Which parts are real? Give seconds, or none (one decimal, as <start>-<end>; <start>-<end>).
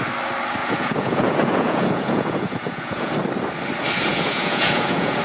0.0-0.6; 3.1-4.1